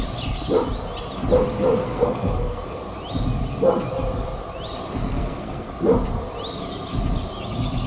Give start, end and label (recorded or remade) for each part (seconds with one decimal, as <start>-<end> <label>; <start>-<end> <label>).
0.0-1.8 recorded; 1.8-2.8 remade; 2.8-5.0 recorded; 5.0-5.7 remade; 5.7-7.9 recorded